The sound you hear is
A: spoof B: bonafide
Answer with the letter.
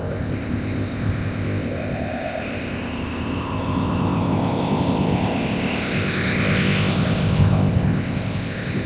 A